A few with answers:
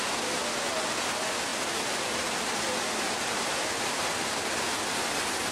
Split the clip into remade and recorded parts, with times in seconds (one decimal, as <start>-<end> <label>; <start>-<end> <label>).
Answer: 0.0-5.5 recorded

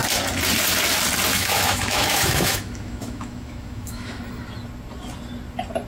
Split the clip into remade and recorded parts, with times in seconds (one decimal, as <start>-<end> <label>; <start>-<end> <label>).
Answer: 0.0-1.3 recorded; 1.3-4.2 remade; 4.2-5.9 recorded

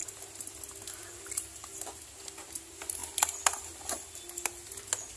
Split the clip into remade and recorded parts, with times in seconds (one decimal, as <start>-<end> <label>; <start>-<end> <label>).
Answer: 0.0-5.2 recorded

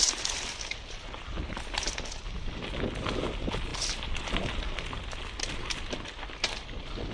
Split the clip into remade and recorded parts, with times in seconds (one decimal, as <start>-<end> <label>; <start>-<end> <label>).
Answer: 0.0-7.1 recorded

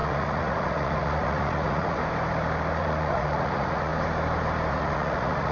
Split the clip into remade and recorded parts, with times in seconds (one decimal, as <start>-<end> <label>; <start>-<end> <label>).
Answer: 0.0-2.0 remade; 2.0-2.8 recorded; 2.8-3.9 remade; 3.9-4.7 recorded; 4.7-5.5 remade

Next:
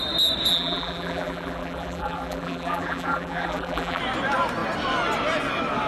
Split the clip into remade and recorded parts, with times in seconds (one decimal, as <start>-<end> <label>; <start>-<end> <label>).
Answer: 0.0-0.5 recorded; 0.5-4.0 remade; 4.0-5.9 recorded